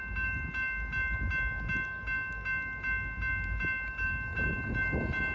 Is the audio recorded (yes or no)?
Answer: yes